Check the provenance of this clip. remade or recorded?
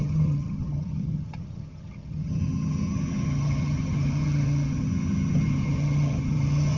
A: remade